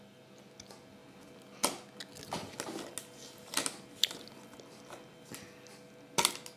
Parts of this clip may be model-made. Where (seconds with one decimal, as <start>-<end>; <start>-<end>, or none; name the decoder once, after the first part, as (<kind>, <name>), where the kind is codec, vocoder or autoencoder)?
none